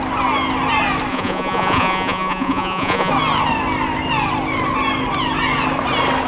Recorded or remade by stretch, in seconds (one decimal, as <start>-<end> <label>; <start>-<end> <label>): 0.0-1.1 recorded; 1.1-3.1 remade; 3.1-6.3 recorded